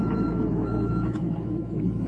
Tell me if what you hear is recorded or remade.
remade